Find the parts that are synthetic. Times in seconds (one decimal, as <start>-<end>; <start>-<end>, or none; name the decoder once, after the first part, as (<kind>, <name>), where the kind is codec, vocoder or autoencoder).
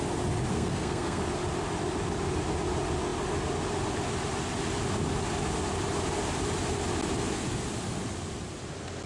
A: 0.5-1.2 (codec, SNAC)